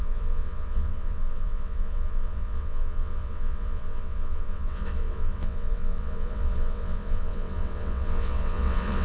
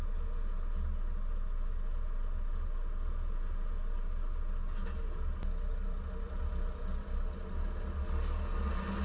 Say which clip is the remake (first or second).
first